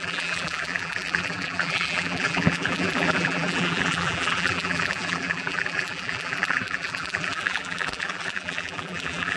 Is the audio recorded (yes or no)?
no